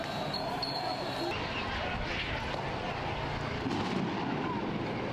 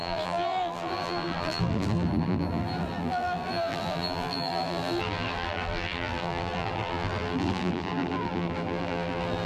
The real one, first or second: first